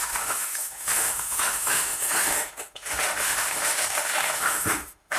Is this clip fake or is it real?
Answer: fake